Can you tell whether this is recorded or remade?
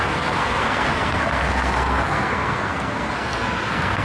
remade